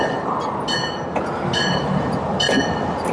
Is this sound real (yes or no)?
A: yes